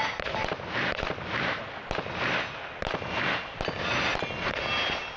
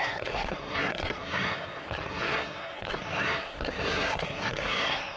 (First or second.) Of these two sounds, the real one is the first